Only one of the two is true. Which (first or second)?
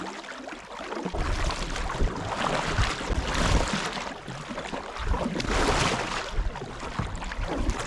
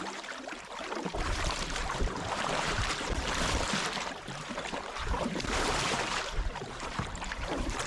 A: first